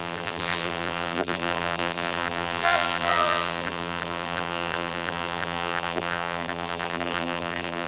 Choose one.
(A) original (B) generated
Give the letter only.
B